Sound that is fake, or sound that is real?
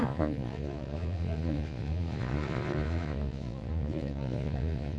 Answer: fake